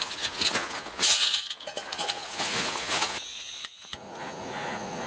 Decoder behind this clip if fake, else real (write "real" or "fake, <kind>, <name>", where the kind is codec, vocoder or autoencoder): fake, vocoder, Vocos